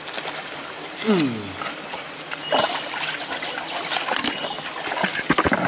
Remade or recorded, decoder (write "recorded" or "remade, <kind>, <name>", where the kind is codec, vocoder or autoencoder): recorded